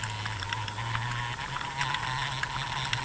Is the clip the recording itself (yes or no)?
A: yes